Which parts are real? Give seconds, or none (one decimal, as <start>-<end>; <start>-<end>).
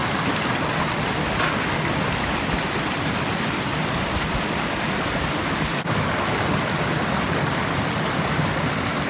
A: 0.0-9.1